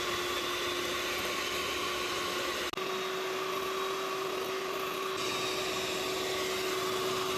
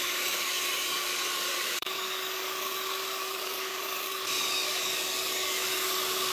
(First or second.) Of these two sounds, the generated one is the second